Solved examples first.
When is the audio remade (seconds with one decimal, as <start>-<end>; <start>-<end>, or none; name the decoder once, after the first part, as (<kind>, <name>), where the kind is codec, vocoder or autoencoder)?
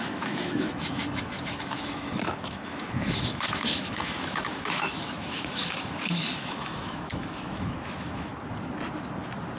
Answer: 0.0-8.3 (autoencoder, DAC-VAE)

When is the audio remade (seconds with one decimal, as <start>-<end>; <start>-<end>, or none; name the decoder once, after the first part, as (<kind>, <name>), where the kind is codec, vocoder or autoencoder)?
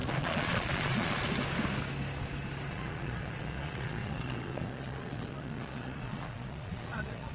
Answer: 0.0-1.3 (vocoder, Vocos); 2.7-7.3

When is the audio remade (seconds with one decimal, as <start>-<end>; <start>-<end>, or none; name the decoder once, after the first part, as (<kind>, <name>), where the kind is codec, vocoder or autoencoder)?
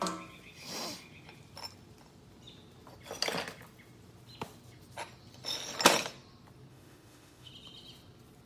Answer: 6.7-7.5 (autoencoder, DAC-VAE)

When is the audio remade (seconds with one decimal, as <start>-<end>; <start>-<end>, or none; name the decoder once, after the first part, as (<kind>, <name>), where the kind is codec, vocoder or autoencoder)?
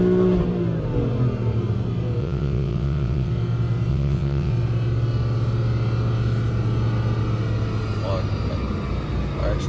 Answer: 2.2-3.3 (vocoder, WaveNeXt); 3.9-4.5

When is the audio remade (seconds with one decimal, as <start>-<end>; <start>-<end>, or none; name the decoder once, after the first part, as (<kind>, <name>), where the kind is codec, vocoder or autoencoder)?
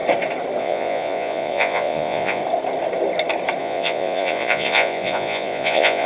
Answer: 0.6-2.4 (vocoder, Vocos); 3.6-6.1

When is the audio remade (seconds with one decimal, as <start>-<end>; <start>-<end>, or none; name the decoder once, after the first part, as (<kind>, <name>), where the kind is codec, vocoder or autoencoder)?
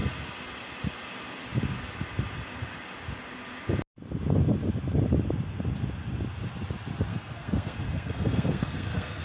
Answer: 7.1-9.2 (codec, SNAC)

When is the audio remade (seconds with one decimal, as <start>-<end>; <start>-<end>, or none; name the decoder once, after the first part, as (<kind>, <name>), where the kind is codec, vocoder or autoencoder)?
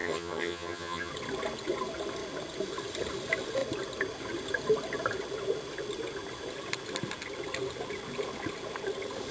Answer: 0.0-1.1 (vocoder, HiFi-GAN)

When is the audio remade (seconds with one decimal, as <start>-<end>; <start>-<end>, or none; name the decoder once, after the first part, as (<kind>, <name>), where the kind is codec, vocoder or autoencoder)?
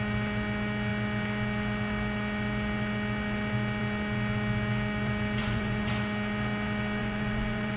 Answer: 5.4-5.9 (vocoder, Vocos); 7.0-7.8